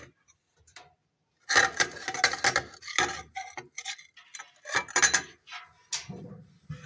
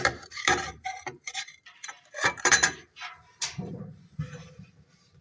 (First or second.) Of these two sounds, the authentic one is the first